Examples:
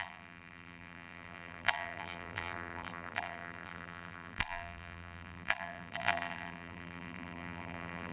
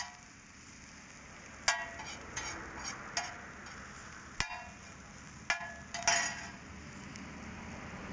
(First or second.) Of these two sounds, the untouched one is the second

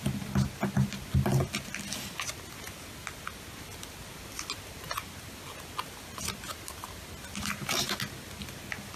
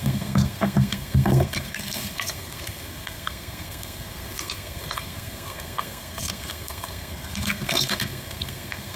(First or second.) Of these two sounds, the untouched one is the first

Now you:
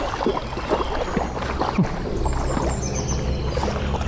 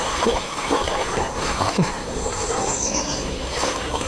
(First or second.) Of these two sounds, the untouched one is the first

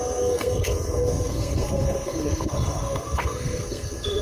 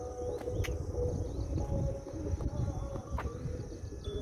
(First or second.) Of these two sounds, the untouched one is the second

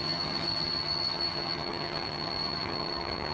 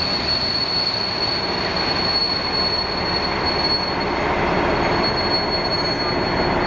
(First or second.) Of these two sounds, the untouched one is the second